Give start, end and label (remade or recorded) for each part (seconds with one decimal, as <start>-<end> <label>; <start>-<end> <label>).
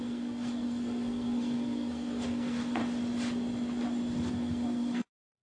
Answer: 0.0-2.8 remade; 2.8-4.3 recorded; 4.3-5.4 remade